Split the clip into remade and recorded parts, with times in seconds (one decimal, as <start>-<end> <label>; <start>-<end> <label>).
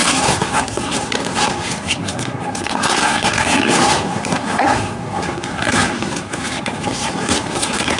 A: 0.0-8.0 remade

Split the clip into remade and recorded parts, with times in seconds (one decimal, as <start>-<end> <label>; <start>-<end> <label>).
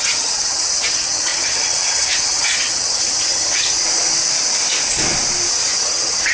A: 0.0-3.8 remade; 3.8-5.5 recorded; 5.5-6.3 remade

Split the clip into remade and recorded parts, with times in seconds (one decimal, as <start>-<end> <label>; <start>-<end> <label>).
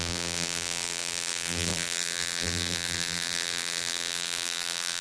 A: 0.0-5.0 remade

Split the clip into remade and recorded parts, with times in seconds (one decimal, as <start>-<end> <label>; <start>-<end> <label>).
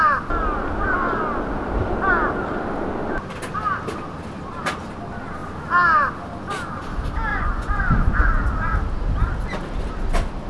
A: 0.0-7.3 recorded; 7.3-8.4 remade; 8.4-10.5 recorded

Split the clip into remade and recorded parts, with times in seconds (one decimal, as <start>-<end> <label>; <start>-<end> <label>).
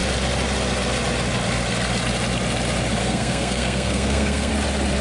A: 0.0-3.0 recorded; 3.0-4.5 remade; 4.5-5.0 recorded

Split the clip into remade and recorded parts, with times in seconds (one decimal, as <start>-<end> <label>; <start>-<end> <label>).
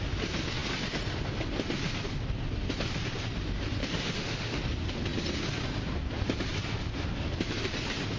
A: 0.0-3.8 recorded; 3.8-4.6 remade; 4.6-8.2 recorded